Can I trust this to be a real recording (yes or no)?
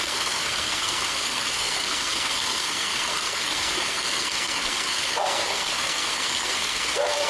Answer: no